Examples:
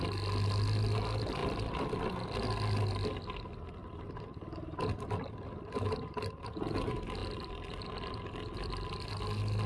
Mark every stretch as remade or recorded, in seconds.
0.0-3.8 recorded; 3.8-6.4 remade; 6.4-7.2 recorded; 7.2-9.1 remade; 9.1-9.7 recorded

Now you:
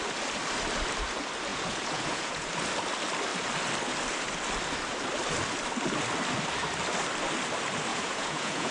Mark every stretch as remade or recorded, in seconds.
0.0-1.5 recorded; 1.5-2.5 remade; 2.5-7.9 recorded; 7.9-8.7 remade

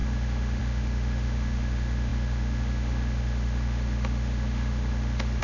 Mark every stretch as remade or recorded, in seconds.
0.0-5.4 remade